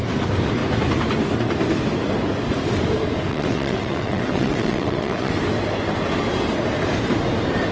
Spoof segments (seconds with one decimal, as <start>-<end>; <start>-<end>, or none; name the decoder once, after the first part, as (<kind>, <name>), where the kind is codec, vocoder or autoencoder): 3.3-5.3 (vocoder, WaveNeXt)